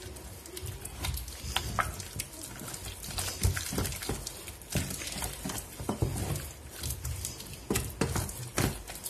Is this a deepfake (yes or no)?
no